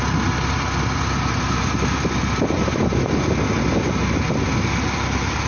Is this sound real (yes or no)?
yes